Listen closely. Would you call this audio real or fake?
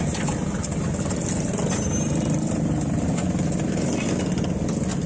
real